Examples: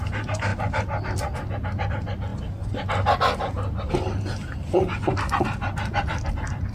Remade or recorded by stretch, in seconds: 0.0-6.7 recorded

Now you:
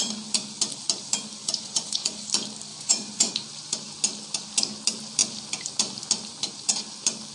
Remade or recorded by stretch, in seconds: 0.0-1.4 recorded; 1.4-2.3 remade; 2.3-2.7 recorded; 2.7-3.3 remade; 3.3-7.3 recorded

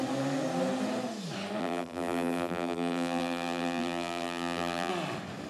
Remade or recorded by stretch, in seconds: 0.0-1.6 recorded; 1.6-4.9 remade; 4.9-5.5 recorded